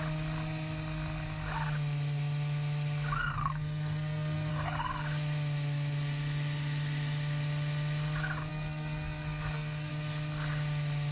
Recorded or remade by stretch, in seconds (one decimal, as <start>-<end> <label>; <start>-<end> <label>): 0.0-3.4 recorded; 3.4-4.5 remade; 4.5-8.5 recorded; 8.5-9.9 remade; 9.9-11.1 recorded

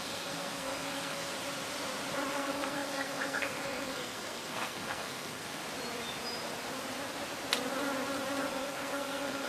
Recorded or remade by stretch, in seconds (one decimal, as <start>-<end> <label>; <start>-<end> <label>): 0.0-1.3 remade; 1.3-2.3 recorded; 2.3-5.6 remade; 5.6-8.5 recorded; 8.5-9.5 remade